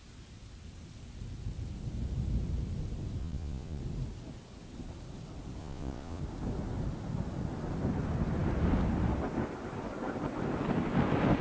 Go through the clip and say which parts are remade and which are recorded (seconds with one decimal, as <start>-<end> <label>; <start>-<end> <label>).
0.0-3.2 recorded; 3.2-3.8 remade; 3.8-5.6 recorded; 5.6-6.2 remade; 6.2-11.4 recorded